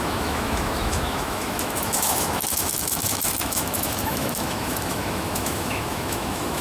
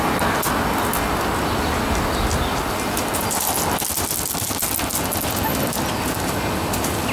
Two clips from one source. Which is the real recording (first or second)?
second